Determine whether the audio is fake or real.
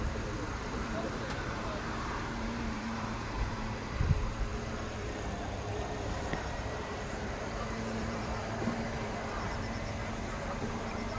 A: fake